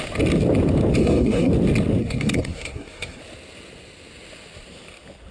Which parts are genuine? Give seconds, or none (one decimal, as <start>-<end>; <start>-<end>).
0.0-1.0; 1.5-2.0; 3.2-5.3